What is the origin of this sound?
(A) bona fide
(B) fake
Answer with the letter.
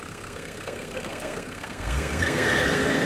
B